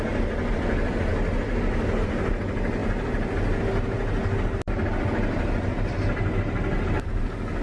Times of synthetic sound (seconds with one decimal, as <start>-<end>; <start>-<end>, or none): none